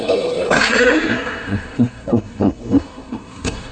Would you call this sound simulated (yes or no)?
yes